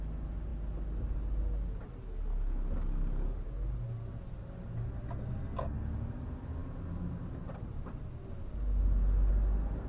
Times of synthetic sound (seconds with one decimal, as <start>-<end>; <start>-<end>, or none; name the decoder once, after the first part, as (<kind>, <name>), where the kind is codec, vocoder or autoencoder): none